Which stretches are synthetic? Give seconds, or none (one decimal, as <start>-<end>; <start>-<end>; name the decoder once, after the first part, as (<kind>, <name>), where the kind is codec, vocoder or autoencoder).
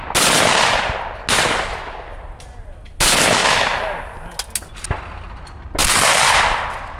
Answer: none